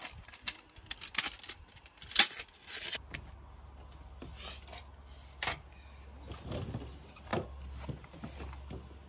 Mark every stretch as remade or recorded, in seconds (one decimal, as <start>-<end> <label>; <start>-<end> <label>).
0.0-9.1 recorded